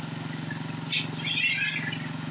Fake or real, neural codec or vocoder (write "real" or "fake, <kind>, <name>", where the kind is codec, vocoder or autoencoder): real